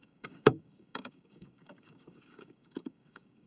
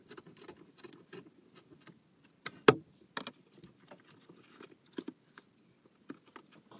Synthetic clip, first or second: first